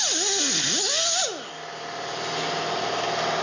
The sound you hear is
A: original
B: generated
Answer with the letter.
A